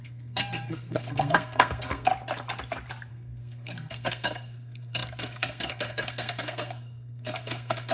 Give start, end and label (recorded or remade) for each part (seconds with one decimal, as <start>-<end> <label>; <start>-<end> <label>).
0.0-2.1 remade; 2.1-3.1 recorded; 3.1-7.9 remade